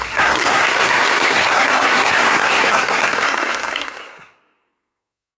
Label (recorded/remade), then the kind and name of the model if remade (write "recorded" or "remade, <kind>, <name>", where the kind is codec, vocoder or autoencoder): remade, codec, SNAC